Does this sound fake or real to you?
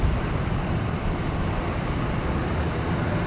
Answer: real